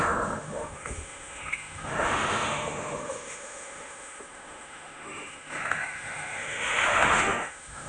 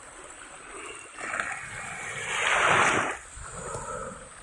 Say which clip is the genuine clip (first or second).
second